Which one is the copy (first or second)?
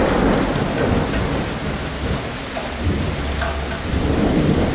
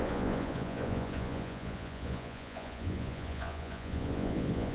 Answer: second